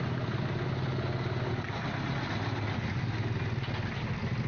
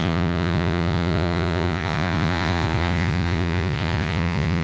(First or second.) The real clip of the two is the first